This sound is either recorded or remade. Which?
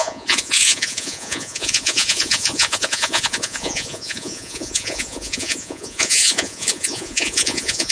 remade